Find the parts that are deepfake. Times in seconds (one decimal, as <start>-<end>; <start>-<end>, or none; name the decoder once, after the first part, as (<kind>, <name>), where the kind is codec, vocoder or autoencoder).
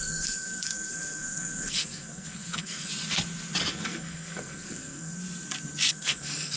0.0-2.9 (codec, SNAC); 3.7-5.1; 5.9-6.6